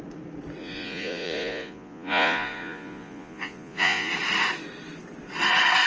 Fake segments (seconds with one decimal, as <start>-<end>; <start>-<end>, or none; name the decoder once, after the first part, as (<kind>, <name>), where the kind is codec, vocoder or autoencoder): 0.6-4.1 (vocoder, Vocos)